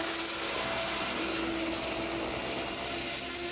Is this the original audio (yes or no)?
yes